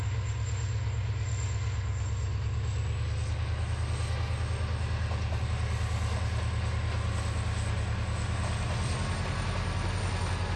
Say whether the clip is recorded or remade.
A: recorded